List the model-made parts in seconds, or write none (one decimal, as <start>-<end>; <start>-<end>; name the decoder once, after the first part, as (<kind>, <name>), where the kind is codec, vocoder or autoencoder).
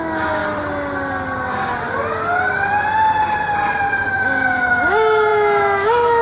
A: 0.0-0.4 (autoencoder, DAC-VAE); 4.1-6.2